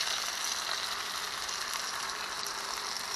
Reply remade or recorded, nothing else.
recorded